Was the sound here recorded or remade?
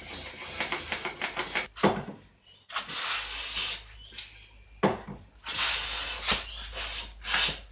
recorded